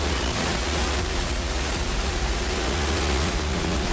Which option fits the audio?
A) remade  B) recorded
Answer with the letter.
A